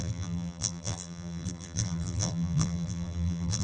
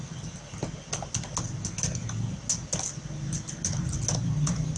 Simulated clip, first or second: first